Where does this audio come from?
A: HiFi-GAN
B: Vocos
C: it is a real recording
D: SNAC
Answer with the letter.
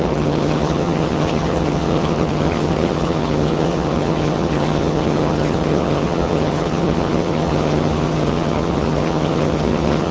A